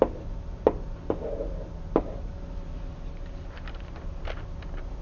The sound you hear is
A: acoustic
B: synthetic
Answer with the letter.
A